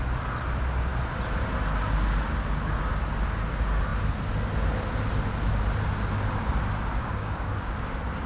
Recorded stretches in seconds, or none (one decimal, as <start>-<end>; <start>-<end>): 0.0-7.0; 7.7-8.3